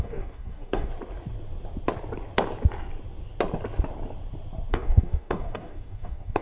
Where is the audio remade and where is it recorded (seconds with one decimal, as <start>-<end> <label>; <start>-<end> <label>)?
0.0-0.9 remade; 0.9-4.7 recorded; 4.7-6.4 remade